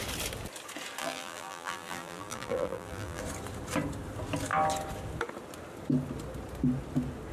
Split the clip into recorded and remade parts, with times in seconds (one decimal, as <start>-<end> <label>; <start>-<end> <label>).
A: 0.0-1.0 recorded; 1.0-3.2 remade; 3.2-7.3 recorded